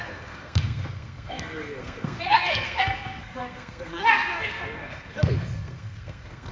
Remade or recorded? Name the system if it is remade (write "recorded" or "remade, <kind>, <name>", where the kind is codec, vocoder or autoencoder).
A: remade, codec, SNAC